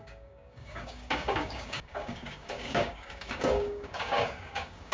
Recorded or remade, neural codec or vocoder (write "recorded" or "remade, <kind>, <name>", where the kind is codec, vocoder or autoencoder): remade, codec, DAC